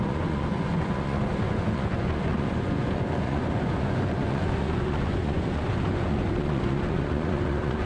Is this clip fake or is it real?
fake